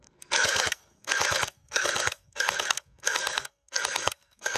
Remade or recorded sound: remade